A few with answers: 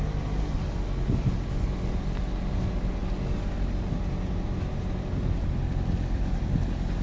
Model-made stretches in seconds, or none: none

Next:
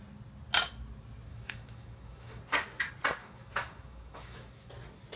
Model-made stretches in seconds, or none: 1.3-2.4 (autoencoder, DAC-VAE); 3.2-4.7

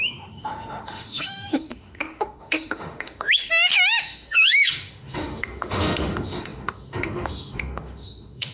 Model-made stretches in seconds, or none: 0.0-8.5 (autoencoder, DAC-VAE)

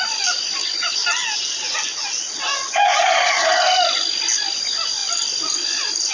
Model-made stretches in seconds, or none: none

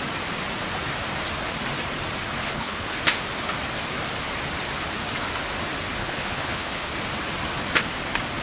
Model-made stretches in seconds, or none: 2.4-3.0 (codec, HILCodec); 6.0-6.9

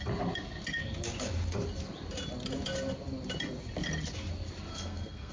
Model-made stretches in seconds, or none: 4.7-5.3 (codec, SNAC)

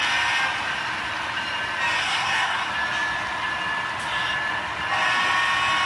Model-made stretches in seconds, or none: 2.0-2.7 (codec, SNAC)